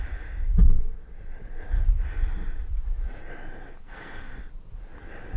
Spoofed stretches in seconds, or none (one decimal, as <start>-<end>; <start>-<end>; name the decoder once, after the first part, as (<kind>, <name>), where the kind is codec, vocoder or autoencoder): 3.8-4.4 (codec, SNAC)